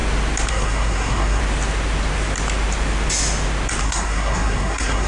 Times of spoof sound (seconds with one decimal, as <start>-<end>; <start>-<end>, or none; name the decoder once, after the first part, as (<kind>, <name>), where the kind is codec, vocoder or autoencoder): 0.5-1.4 (codec, SNAC); 3.8-5.1